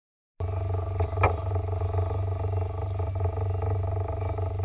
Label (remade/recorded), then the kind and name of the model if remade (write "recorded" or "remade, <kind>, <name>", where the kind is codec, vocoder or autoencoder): recorded